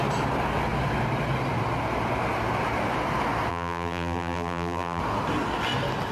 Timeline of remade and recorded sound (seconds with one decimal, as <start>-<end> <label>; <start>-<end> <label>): 0.0-3.5 recorded; 3.5-5.0 remade; 5.0-6.1 recorded